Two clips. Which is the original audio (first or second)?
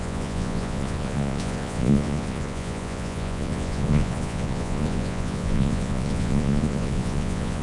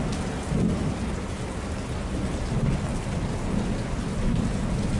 second